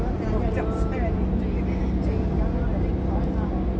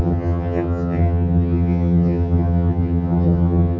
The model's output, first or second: second